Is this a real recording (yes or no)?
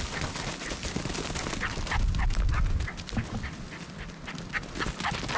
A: yes